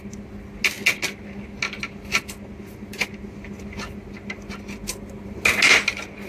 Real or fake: real